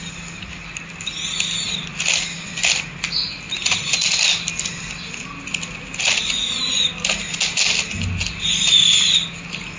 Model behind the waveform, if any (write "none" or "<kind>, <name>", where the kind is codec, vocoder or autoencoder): none